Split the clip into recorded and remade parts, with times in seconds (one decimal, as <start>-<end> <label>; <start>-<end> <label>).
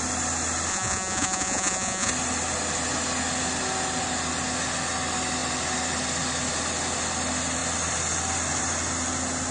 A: 0.0-0.7 recorded; 0.7-2.1 remade; 2.1-9.5 recorded